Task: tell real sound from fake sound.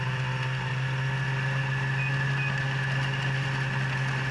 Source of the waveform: real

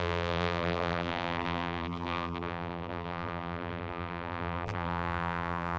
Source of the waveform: fake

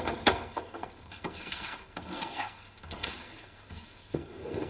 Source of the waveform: fake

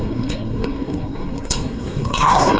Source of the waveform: fake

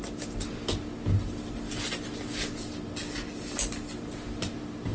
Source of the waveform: real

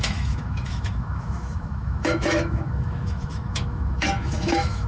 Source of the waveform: fake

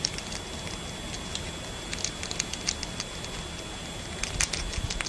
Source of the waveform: real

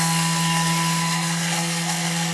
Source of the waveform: fake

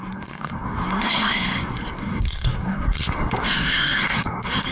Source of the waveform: fake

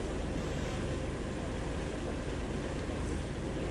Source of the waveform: real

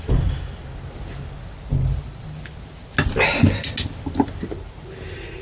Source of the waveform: real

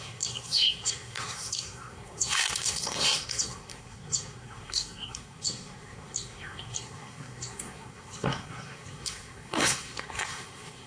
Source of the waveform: fake